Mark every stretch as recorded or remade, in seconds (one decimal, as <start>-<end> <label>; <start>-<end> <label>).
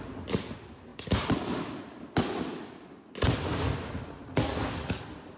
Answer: 0.0-5.4 recorded